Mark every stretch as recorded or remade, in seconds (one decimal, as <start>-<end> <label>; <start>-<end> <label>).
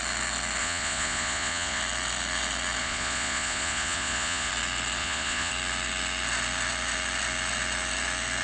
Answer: 0.0-0.6 recorded; 0.6-1.8 remade; 1.8-2.8 recorded; 2.8-4.5 remade; 4.5-5.0 recorded; 5.0-5.5 remade; 5.5-8.4 recorded